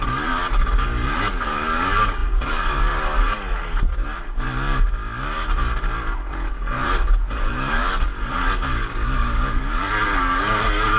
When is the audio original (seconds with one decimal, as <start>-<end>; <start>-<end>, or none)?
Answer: 3.9-6.3